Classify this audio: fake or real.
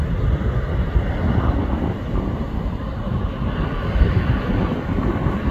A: real